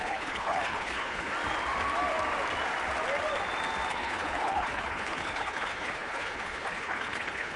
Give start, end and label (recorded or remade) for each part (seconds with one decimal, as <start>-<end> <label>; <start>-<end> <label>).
0.0-1.3 remade; 1.3-3.9 recorded; 3.9-7.6 remade